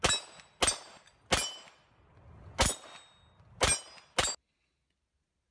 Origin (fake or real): real